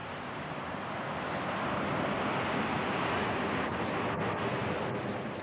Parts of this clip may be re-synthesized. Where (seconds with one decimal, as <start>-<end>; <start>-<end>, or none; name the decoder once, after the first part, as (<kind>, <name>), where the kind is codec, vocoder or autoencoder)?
none